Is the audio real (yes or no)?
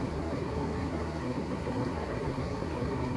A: no